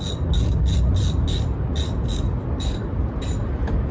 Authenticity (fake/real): real